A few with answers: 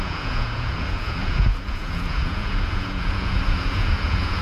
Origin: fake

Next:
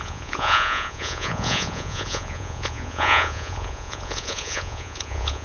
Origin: fake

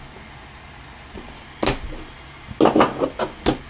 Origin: real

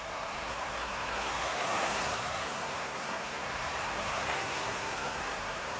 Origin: fake